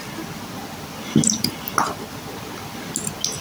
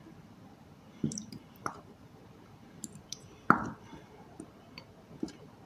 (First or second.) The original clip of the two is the first